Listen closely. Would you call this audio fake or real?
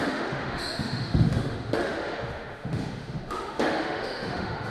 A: fake